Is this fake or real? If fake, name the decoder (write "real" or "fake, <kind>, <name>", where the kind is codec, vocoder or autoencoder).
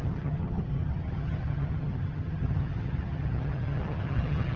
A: fake, vocoder, HiFi-GAN